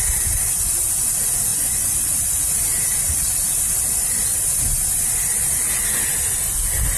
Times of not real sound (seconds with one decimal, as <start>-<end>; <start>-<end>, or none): 1.5-2.5